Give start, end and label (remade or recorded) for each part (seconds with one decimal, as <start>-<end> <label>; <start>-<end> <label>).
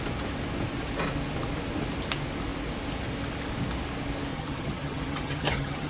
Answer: 0.0-4.3 recorded; 4.3-5.9 remade